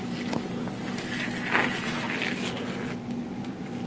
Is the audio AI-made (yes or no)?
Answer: no